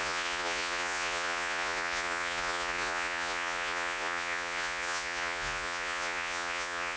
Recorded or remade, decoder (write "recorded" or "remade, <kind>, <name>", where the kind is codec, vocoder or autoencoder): remade, vocoder, Vocos